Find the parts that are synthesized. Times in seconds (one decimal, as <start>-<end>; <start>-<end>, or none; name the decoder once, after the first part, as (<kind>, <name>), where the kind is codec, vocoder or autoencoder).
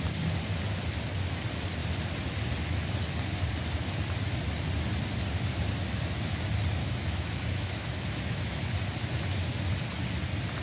6.8-8.6 (autoencoder, DAC-VAE)